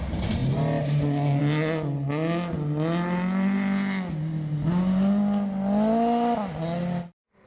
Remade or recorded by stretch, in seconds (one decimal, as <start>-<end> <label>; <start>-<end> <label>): 0.0-7.5 recorded